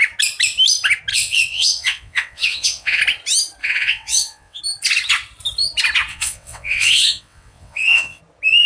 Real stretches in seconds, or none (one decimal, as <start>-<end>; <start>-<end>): 0.0-1.1; 3.0-3.6; 4.6-6.1; 8.2-8.7